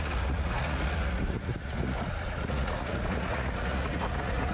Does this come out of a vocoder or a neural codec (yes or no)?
yes